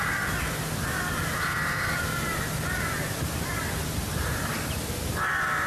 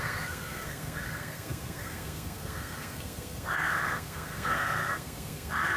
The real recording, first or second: first